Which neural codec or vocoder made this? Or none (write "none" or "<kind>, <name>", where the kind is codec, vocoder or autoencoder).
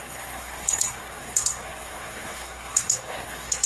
codec, SNAC